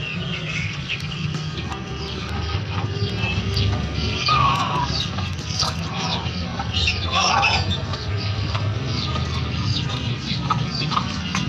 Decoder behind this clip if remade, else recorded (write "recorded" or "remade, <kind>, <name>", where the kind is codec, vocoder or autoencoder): remade, codec, SNAC